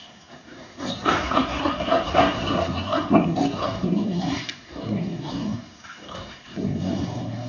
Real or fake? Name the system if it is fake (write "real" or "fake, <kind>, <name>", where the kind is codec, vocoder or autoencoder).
fake, codec, SNAC